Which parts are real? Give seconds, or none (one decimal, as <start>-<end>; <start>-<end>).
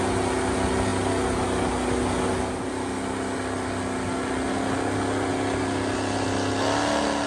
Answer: 0.0-7.3